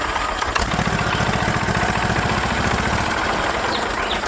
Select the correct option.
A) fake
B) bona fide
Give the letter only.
B